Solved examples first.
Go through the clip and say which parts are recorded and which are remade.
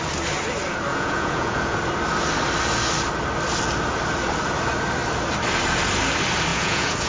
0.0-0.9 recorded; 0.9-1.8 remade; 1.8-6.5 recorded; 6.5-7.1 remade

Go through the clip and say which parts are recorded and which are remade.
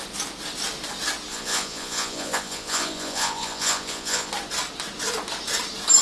0.0-1.3 recorded; 1.3-4.3 remade; 4.3-6.0 recorded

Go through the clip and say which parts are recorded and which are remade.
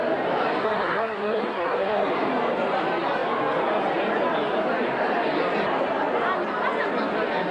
0.0-0.6 recorded; 0.6-2.1 remade; 2.1-7.5 recorded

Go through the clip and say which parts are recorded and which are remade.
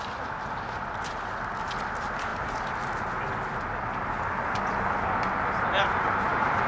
0.0-6.7 recorded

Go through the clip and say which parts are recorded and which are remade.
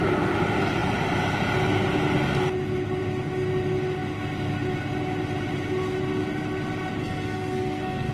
0.0-7.0 recorded; 7.0-8.1 remade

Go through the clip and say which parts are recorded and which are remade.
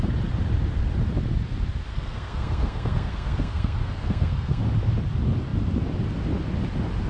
0.0-1.9 recorded; 1.9-4.6 remade; 4.6-7.1 recorded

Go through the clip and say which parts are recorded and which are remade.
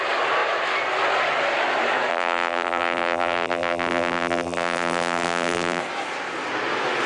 0.0-2.1 recorded; 2.1-5.8 remade; 5.8-7.1 recorded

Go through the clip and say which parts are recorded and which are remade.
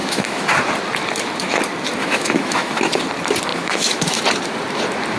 0.0-0.5 remade; 0.5-2.0 recorded; 2.0-2.8 remade; 2.8-3.5 recorded; 3.5-4.2 remade; 4.2-5.2 recorded